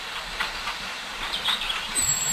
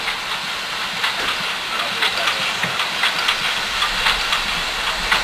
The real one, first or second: second